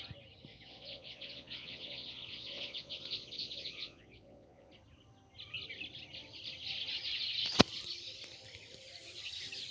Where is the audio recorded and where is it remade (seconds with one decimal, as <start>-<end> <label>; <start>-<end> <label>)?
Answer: 0.0-0.5 recorded; 0.5-4.7 remade; 4.7-9.7 recorded